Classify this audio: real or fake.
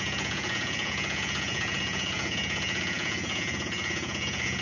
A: fake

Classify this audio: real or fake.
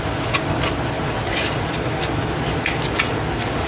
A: real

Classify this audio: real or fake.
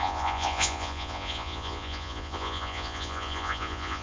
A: fake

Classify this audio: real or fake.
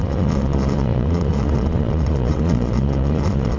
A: fake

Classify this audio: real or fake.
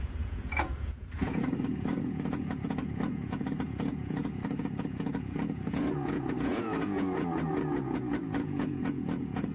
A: fake